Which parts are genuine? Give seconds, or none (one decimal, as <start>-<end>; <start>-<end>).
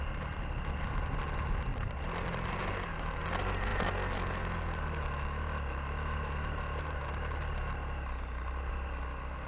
0.0-9.5